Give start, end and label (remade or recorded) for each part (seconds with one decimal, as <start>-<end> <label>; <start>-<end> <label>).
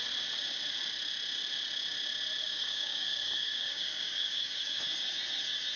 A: 0.0-2.4 recorded; 2.4-4.8 remade; 4.8-5.8 recorded